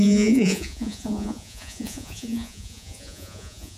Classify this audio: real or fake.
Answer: fake